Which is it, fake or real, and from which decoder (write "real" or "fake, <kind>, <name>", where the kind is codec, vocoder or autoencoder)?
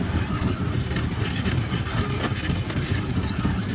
real